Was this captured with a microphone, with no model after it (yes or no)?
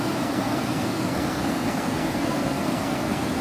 no